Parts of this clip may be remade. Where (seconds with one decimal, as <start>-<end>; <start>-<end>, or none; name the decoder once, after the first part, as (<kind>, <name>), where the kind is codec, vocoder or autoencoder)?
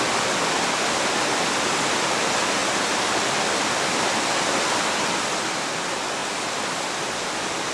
none